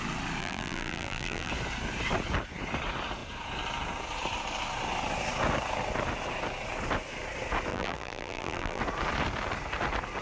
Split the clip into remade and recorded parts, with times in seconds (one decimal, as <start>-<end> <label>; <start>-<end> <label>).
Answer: 0.0-0.4 recorded; 0.4-1.5 remade; 1.5-7.7 recorded; 7.7-8.8 remade; 8.8-10.2 recorded